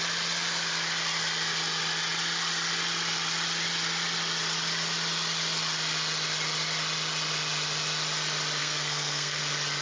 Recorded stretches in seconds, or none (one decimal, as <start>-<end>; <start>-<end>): 0.0-8.6; 9.4-9.8